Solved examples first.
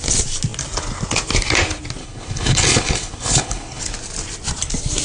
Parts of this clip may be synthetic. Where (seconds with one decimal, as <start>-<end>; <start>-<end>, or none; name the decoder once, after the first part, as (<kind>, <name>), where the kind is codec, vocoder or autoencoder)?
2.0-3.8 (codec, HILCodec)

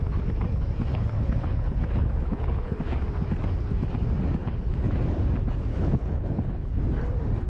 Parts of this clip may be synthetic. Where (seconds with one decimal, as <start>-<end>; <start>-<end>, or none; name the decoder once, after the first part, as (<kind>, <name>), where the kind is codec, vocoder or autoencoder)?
0.9-2.8 (codec, HILCodec); 4.4-4.9; 5.7-6.8

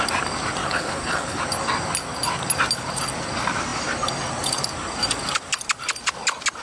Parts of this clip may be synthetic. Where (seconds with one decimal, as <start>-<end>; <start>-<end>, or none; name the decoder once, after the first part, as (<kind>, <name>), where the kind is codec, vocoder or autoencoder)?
0.6-1.4 (codec, HILCodec)

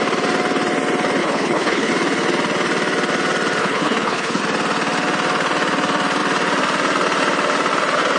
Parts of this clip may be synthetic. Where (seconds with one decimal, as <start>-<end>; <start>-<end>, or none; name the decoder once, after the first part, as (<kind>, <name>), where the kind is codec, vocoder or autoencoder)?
1.2-1.9 (codec, HILCodec); 3.6-4.4

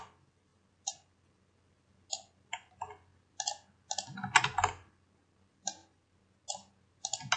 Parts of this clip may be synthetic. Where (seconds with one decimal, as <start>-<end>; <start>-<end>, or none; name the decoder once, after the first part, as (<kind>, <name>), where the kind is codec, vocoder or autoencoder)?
none

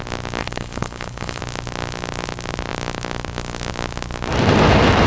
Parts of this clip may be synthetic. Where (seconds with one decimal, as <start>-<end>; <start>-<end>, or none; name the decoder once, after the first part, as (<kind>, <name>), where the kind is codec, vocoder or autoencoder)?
0.4-1.4 (codec, HILCodec)